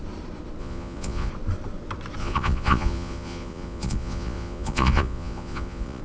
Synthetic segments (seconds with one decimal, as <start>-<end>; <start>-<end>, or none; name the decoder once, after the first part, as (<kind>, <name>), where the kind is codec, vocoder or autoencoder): 0.6-1.3 (vocoder, Vocos); 2.2-6.0